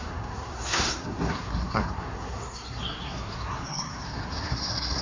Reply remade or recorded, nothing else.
remade